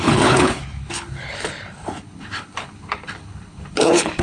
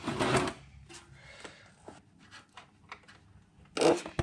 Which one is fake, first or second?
first